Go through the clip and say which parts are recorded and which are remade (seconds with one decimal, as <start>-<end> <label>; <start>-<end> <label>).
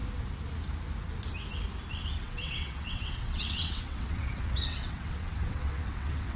0.0-2.1 recorded; 2.1-6.4 remade